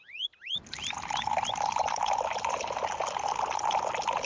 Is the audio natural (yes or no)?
yes